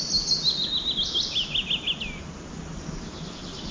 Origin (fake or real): real